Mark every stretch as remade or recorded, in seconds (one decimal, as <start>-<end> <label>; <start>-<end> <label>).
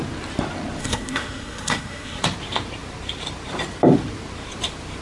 0.0-0.8 recorded; 0.8-2.2 remade; 2.2-5.0 recorded